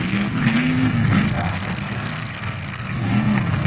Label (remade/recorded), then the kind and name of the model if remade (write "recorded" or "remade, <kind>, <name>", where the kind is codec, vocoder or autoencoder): remade, codec, SNAC